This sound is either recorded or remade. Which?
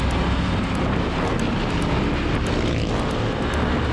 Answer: recorded